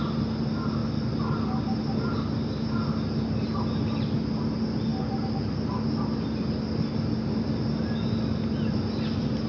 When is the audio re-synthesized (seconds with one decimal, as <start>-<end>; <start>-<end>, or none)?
none